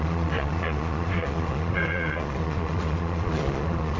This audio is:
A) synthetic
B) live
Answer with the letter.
A